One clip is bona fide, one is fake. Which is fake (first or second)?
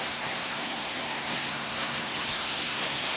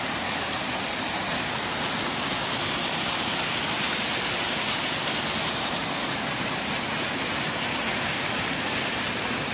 first